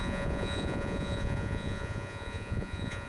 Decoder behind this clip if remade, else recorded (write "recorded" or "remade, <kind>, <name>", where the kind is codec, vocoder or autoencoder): remade, vocoder, Vocos